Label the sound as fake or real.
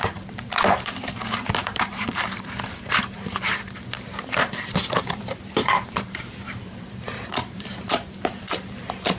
fake